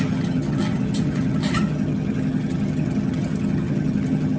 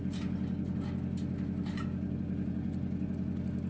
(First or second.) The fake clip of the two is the first